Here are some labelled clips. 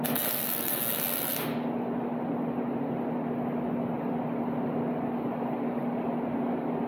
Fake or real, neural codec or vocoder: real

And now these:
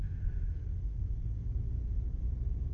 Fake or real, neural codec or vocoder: real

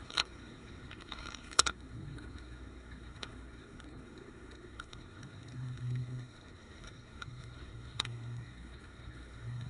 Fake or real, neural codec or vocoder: fake, codec, SNAC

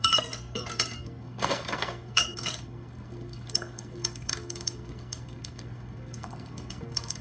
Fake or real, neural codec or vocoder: fake, codec, SNAC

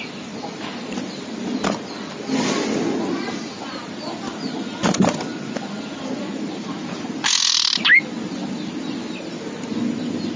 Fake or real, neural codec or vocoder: real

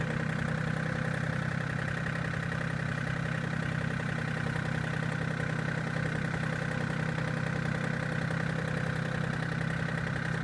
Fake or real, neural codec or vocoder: real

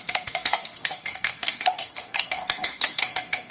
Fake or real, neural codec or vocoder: fake, codec, SNAC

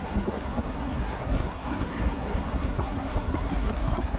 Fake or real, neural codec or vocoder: fake, codec, SNAC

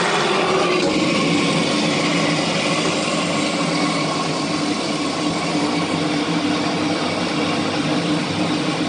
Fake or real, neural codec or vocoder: real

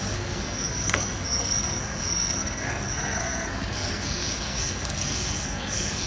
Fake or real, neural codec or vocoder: fake, codec, SNAC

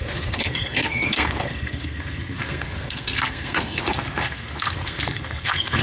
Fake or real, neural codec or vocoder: fake, codec, SNAC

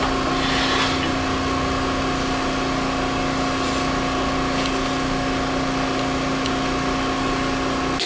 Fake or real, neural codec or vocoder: real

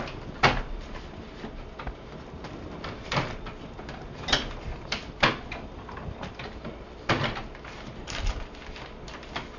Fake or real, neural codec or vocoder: real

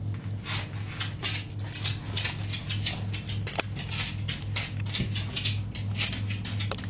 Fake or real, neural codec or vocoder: real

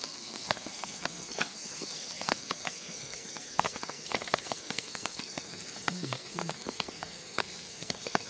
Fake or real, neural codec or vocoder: fake, codec, SNAC